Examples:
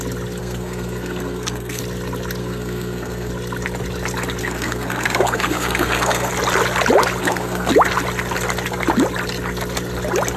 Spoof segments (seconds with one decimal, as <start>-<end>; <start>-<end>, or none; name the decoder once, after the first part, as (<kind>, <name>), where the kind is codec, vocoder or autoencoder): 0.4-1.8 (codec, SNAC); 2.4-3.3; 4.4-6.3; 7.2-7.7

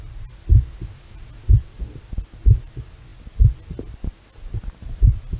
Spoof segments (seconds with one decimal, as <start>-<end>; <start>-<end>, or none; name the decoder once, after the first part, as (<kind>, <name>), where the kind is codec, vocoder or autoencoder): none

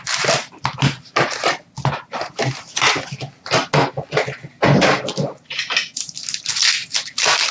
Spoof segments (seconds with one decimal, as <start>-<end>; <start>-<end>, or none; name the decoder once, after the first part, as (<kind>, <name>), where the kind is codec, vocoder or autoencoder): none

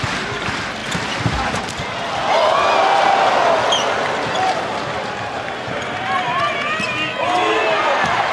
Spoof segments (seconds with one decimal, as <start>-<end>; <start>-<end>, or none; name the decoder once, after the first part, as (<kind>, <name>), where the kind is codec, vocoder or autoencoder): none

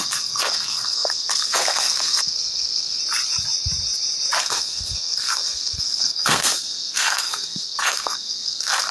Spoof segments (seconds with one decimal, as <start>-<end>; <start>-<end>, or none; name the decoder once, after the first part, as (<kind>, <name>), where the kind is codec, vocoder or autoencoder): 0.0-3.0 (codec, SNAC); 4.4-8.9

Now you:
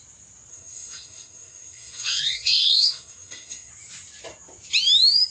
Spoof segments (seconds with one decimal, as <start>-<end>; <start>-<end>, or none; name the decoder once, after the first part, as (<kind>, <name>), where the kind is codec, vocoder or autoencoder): 0.5-3.7 (codec, SNAC)

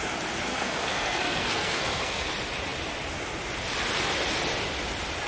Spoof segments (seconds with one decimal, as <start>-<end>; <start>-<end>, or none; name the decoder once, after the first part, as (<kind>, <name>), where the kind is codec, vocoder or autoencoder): 0.5-2.3 (codec, SNAC)